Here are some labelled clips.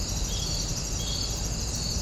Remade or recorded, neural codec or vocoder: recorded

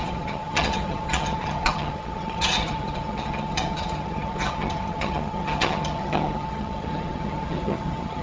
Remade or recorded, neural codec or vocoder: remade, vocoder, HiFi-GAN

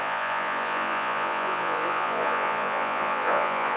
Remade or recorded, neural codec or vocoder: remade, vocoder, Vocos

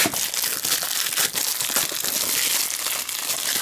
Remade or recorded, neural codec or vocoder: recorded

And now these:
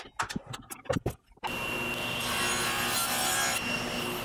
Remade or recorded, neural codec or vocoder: recorded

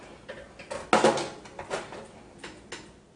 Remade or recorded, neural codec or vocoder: recorded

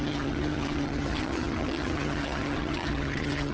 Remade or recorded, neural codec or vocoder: remade, vocoder, HiFi-GAN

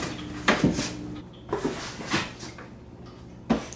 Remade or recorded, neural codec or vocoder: recorded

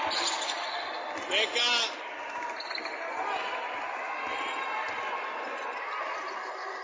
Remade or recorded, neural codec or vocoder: recorded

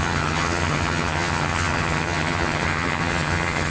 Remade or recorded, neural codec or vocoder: remade, vocoder, HiFi-GAN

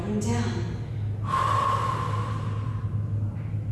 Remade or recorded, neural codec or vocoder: recorded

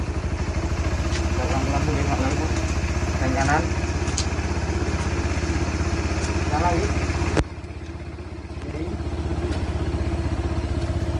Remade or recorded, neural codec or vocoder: recorded